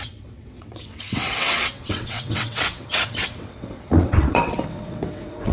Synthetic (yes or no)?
yes